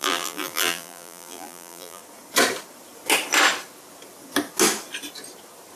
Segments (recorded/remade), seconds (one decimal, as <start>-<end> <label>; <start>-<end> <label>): 0.0-2.0 remade; 2.0-5.8 recorded